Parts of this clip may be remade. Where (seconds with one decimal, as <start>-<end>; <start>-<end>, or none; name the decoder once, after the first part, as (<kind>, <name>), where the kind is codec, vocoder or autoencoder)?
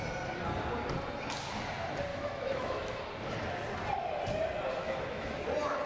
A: 2.1-3.0 (autoencoder, DAC-VAE); 4.8-5.4